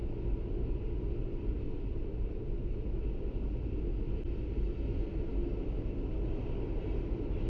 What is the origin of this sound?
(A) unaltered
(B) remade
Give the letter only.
A